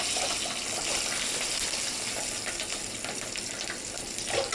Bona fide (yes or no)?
yes